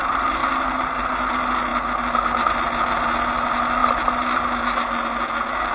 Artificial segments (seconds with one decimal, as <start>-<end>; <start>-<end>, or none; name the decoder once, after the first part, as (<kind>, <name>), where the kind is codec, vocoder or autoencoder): none